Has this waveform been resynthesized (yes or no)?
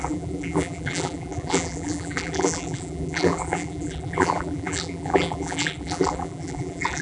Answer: yes